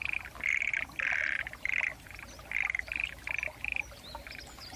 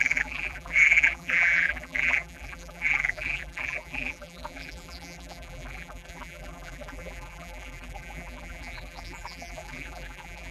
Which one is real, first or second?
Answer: first